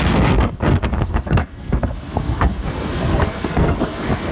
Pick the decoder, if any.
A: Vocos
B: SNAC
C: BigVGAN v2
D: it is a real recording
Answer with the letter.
B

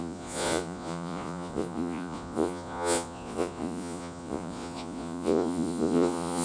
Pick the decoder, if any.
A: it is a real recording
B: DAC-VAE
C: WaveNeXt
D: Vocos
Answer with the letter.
D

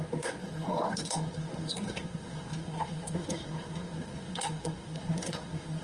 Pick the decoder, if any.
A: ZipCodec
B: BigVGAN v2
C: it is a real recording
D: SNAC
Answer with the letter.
D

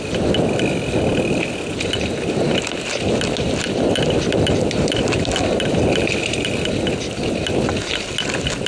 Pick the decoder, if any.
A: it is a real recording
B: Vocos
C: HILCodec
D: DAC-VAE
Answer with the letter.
A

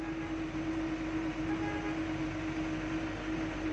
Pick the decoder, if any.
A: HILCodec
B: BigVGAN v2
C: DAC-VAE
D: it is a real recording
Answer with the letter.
D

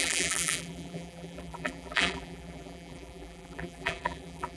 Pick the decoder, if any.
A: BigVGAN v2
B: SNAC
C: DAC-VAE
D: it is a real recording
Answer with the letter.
A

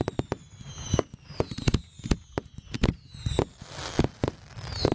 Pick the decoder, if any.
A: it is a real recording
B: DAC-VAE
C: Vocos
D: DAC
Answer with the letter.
A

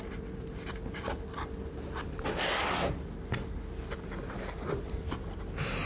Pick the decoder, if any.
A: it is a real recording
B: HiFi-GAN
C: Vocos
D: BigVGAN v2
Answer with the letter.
A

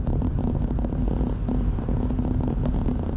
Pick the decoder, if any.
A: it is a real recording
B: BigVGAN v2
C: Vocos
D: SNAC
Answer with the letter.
A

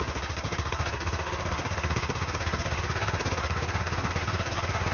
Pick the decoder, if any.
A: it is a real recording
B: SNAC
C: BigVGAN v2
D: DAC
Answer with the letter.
B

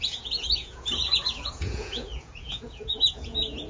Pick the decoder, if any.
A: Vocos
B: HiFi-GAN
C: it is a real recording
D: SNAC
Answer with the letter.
A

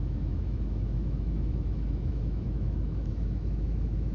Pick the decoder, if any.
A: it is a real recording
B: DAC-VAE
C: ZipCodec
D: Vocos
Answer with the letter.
B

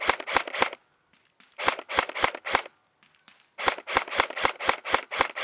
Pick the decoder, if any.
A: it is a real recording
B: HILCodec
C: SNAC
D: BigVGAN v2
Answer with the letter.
A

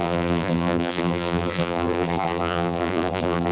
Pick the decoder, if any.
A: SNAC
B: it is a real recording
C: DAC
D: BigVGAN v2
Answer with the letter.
D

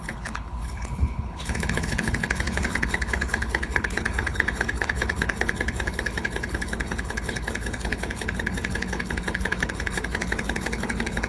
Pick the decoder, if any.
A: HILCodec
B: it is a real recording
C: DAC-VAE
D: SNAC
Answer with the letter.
A